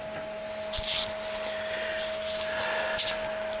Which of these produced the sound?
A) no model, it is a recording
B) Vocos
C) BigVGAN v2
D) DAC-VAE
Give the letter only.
A